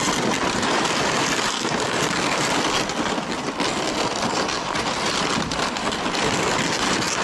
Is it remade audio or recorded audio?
recorded